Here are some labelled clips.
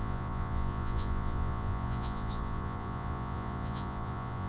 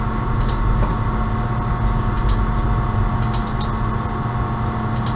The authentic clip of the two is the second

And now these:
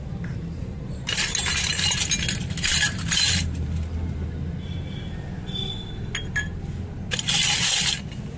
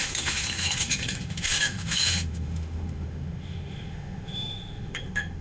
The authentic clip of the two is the first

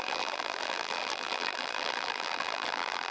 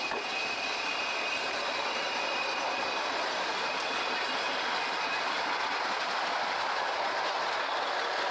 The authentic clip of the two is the second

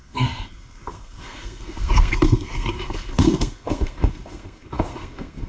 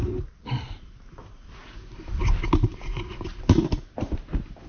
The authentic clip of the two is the second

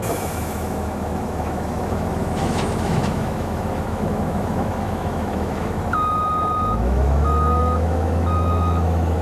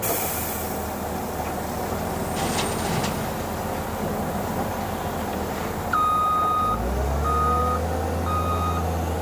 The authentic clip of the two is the second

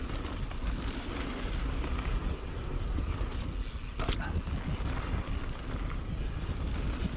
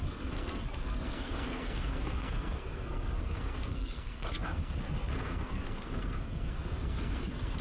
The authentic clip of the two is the first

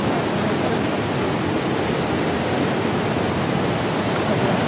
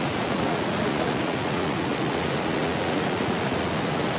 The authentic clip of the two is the first